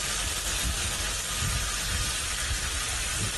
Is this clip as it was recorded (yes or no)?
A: yes